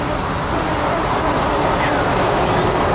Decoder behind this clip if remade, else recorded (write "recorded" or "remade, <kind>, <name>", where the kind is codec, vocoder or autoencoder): recorded